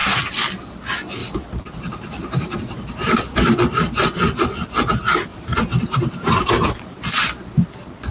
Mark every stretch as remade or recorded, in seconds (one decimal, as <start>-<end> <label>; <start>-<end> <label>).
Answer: 0.0-1.2 recorded; 1.2-3.6 remade; 3.6-5.3 recorded; 5.3-7.0 remade; 7.0-8.1 recorded